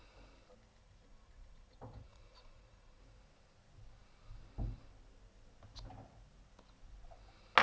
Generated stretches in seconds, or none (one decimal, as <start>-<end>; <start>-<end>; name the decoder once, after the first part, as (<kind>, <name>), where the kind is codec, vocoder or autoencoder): 0.8-3.0 (vocoder, Vocos)